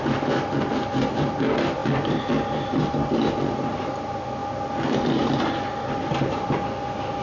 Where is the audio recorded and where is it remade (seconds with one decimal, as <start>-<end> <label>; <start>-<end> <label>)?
0.0-7.2 recorded